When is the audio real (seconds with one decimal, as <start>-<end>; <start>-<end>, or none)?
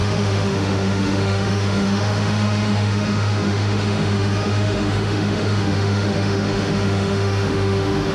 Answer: none